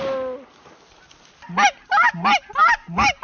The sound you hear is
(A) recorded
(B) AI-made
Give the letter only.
A